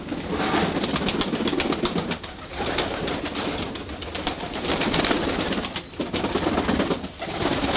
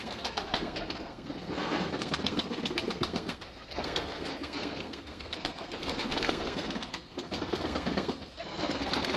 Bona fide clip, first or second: first